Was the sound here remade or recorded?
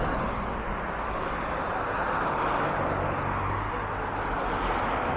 recorded